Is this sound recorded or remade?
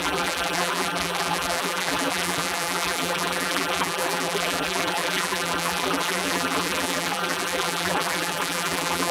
remade